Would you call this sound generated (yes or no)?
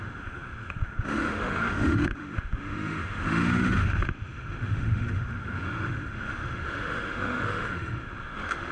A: yes